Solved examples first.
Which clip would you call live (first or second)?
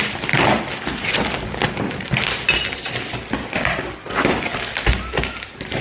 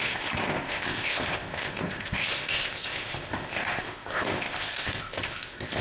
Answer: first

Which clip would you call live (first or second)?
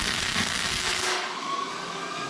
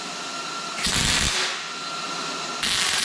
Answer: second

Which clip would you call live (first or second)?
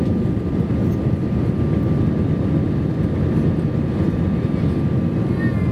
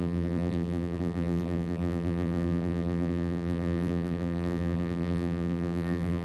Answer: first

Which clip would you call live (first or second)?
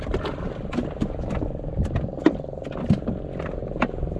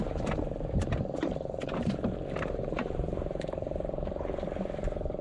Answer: first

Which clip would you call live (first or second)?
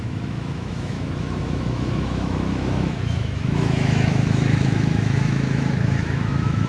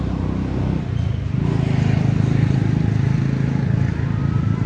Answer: second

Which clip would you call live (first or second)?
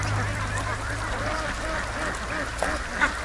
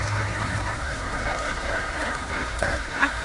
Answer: first